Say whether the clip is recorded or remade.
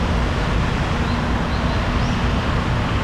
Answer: recorded